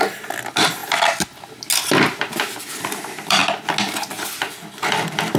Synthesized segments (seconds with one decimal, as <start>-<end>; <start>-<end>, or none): 0.0-0.8; 2.6-3.4; 4.9-5.4

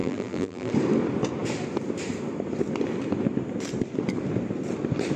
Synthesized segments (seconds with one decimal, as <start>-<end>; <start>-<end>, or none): 0.0-0.7

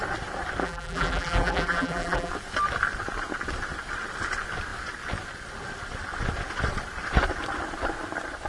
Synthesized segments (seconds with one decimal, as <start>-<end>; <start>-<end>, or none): 0.6-2.3